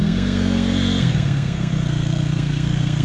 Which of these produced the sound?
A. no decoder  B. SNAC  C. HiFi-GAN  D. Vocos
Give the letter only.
B